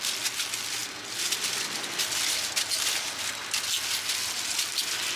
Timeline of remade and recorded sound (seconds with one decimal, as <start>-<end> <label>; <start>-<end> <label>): 0.0-5.2 recorded